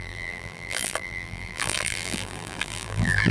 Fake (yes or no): yes